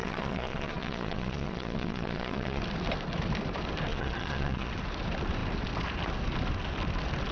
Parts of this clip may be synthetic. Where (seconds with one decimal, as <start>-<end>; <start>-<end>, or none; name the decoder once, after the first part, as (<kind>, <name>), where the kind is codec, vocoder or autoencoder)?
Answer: 0.0-2.6 (vocoder, Vocos); 3.9-4.7